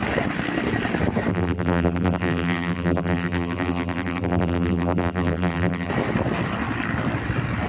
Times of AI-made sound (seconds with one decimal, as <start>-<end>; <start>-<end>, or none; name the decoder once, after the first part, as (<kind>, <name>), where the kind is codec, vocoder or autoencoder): 1.3-5.9 (vocoder, BigVGAN v2)